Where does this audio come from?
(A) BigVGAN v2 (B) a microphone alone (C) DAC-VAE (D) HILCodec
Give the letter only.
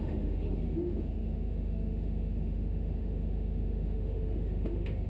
C